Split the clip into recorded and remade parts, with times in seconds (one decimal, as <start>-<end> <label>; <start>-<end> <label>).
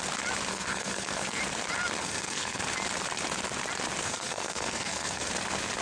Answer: 0.0-0.5 recorded; 0.5-1.4 remade; 1.4-2.0 recorded; 2.0-2.6 remade; 2.6-4.0 recorded; 4.0-5.3 remade; 5.3-5.8 recorded